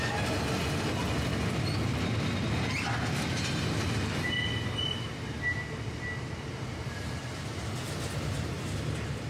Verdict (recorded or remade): recorded